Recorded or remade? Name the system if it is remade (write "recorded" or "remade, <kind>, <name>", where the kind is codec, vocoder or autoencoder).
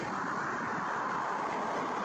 recorded